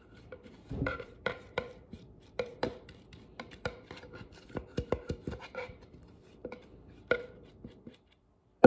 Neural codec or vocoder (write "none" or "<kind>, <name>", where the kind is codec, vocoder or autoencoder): vocoder, BigVGAN v2